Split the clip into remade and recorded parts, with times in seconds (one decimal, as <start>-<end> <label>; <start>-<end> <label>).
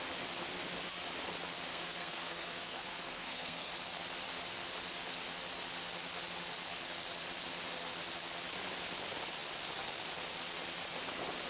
0.0-1.7 recorded; 1.7-3.7 remade; 3.7-11.5 recorded